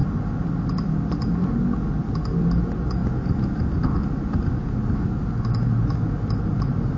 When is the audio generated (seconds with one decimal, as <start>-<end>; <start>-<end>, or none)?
none